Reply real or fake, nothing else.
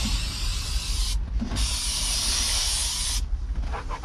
real